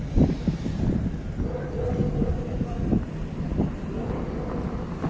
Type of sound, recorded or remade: recorded